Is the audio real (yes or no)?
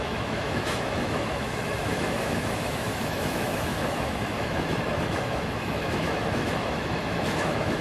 no